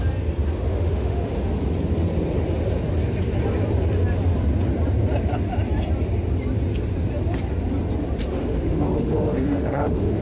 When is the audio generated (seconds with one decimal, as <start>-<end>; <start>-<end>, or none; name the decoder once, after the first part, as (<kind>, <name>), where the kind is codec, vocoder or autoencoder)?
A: 0.7-1.5 (autoencoder, DAC-VAE); 8.3-10.2